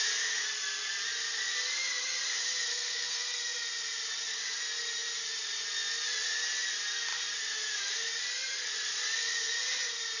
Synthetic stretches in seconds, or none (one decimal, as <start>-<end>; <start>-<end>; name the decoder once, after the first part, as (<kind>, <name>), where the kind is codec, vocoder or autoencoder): 2.7-3.4 (codec, SNAC)